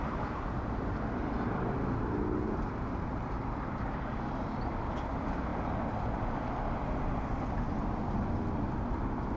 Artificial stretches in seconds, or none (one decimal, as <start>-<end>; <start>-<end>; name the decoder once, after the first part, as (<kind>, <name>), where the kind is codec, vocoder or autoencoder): none